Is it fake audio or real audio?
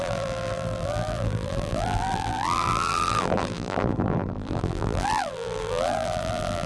fake